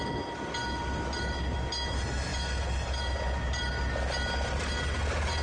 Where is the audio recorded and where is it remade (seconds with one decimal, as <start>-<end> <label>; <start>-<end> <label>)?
0.0-5.4 recorded